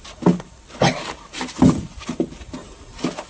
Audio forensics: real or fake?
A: real